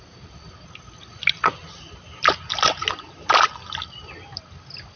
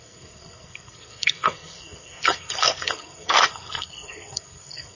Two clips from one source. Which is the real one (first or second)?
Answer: first